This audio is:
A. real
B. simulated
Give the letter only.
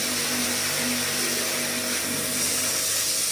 A